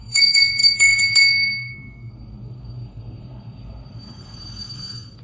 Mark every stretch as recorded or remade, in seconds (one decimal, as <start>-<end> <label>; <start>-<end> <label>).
0.0-5.2 remade

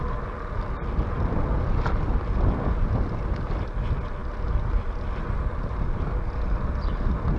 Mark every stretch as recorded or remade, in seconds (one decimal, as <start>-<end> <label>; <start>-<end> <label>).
0.0-7.4 recorded

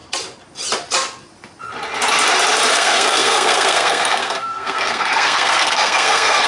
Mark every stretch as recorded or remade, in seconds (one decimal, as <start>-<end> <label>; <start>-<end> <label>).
0.0-2.7 recorded; 2.7-6.5 remade

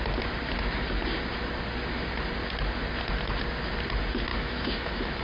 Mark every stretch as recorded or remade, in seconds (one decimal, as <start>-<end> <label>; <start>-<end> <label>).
0.0-4.3 recorded; 4.3-5.2 remade

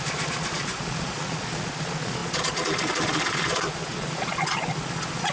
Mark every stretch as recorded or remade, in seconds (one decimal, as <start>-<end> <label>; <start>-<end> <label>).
0.0-5.3 remade

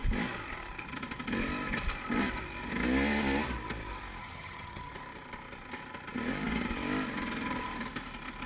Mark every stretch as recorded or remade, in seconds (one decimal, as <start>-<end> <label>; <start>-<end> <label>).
0.0-4.2 recorded; 4.2-4.9 remade; 4.9-8.5 recorded

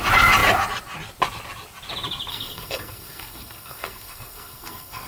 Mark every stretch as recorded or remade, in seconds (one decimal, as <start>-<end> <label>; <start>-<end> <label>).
0.0-2.3 recorded; 2.3-5.1 remade

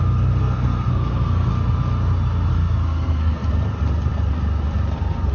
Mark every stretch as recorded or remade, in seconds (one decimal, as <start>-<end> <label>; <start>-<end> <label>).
0.0-0.4 recorded; 0.4-1.5 remade; 1.5-2.5 recorded; 2.5-3.5 remade; 3.5-5.3 recorded